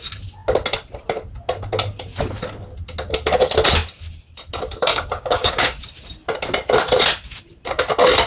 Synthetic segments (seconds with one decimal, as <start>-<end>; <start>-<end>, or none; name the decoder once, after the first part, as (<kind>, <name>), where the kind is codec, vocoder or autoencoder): 4.9-5.8 (codec, DAC)